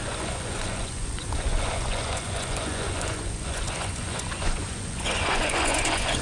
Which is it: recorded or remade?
remade